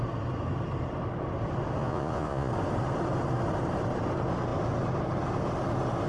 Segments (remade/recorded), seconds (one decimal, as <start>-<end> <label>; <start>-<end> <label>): 0.0-1.8 recorded; 1.8-2.5 remade; 2.5-6.1 recorded